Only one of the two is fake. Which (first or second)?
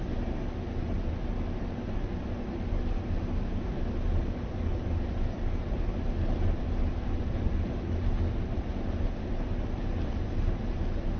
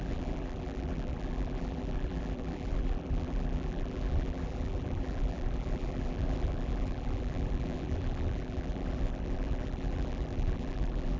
second